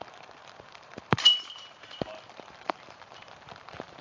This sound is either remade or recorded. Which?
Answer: remade